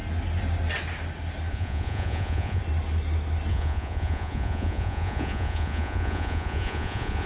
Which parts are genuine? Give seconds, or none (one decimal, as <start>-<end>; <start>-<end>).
0.0-1.5; 2.6-3.5